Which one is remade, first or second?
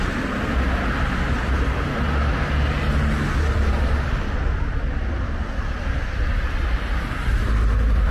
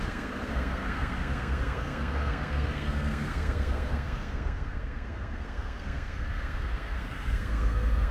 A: second